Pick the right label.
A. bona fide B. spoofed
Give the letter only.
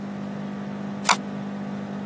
A